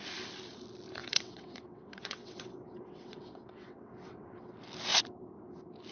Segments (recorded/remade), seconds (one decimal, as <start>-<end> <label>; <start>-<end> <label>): 0.0-1.0 recorded; 1.0-4.5 remade; 4.5-5.9 recorded

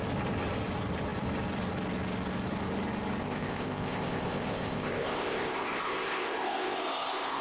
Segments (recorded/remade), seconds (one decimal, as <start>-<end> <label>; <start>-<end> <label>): 0.0-3.2 recorded; 3.2-7.4 remade

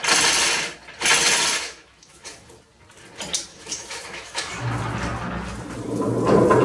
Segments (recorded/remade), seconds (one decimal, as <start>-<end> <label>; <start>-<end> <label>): 0.0-1.5 recorded; 1.5-2.5 remade; 2.5-3.5 recorded; 3.5-4.5 remade; 4.5-6.6 recorded

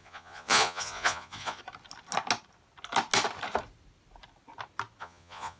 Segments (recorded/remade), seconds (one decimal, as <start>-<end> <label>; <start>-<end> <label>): 0.0-1.6 remade; 1.6-5.0 recorded; 5.0-5.6 remade

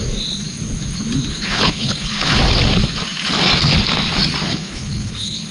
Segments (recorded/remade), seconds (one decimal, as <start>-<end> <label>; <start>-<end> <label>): 0.0-1.3 recorded; 1.3-2.4 remade; 2.4-4.5 recorded; 4.5-5.5 remade